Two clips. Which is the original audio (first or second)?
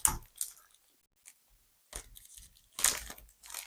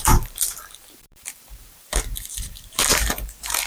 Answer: first